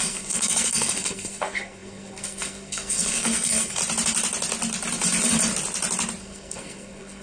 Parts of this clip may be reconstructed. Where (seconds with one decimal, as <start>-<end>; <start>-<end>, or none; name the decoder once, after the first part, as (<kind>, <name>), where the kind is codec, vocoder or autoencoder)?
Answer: 0.0-3.8 (codec, SNAC); 6.2-7.2